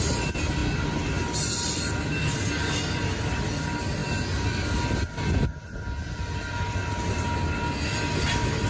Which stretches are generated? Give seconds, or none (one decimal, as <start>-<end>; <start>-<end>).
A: none